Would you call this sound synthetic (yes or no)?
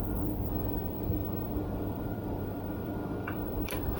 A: yes